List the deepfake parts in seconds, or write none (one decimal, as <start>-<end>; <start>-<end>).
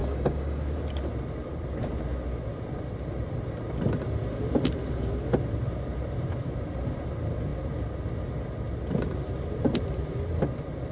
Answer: 0.0-0.6